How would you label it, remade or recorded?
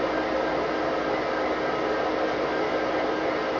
recorded